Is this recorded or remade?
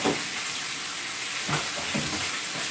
recorded